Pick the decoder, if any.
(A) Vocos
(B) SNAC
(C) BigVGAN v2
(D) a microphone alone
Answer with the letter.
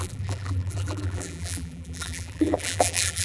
C